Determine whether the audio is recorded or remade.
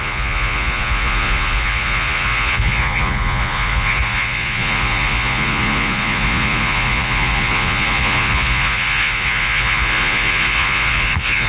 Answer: remade